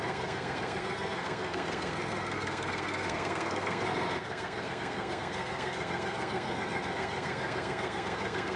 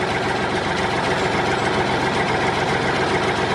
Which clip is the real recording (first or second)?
second